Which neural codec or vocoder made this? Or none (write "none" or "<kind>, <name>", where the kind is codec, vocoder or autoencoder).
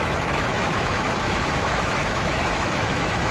autoencoder, DAC-VAE